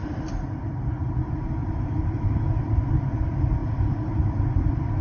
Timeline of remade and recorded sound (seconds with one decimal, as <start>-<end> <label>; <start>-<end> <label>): 0.0-0.6 remade; 0.6-1.6 recorded; 1.6-2.2 remade; 2.2-5.0 recorded